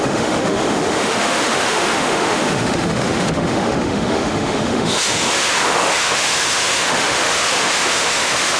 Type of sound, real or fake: fake